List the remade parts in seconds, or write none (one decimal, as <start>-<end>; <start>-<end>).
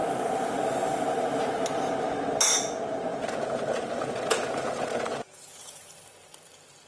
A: 3.1-5.9